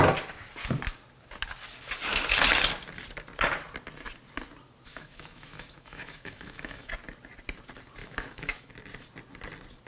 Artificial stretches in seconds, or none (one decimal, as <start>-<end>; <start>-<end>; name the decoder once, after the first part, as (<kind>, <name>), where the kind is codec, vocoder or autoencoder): 4.9-6.9 (autoencoder, DAC-VAE); 8.0-8.7

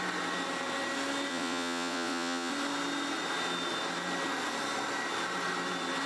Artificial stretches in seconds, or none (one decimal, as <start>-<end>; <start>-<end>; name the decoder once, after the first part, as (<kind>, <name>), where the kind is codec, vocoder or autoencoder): 1.3-2.5 (vocoder, Vocos)